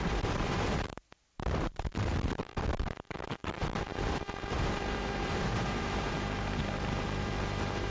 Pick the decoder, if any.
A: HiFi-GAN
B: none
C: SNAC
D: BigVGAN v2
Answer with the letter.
D